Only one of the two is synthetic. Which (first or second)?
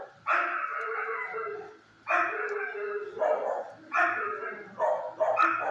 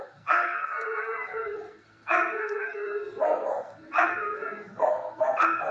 second